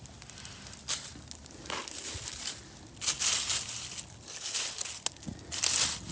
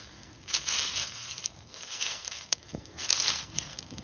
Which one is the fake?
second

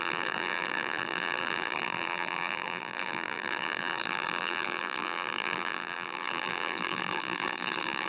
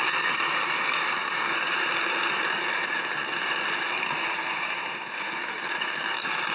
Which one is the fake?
first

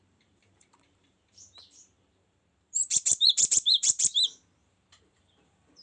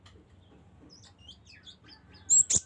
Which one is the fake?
first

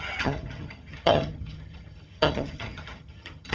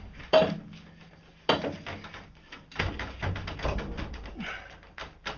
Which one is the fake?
first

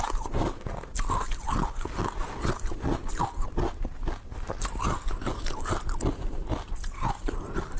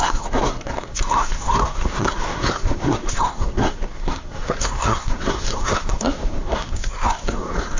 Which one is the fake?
second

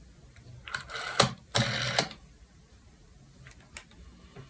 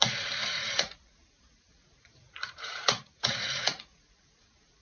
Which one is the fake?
second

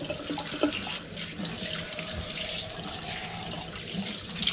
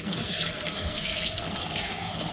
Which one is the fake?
second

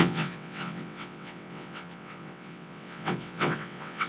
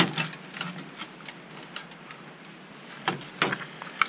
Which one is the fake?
first